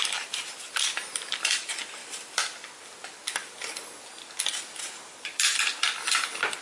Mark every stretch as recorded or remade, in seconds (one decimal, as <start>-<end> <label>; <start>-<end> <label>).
0.0-6.6 recorded